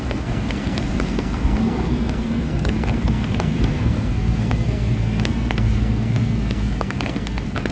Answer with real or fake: fake